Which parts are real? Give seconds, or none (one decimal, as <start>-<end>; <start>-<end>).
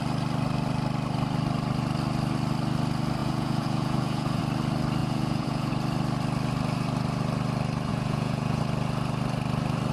0.0-3.2; 4.4-5.0; 5.7-7.9; 8.6-9.9